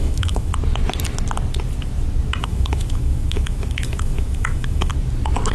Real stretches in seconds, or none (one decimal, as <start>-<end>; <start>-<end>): 0.5-2.4; 4.9-5.5